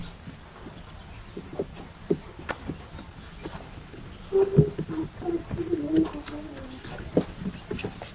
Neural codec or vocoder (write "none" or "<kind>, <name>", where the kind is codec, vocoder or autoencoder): none